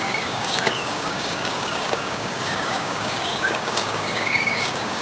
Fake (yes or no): yes